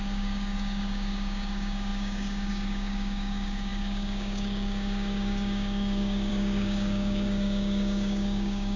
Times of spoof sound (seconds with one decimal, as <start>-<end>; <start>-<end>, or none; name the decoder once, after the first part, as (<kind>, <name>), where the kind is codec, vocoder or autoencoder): 0.0-8.8 (codec, DAC)